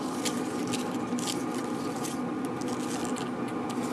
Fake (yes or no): no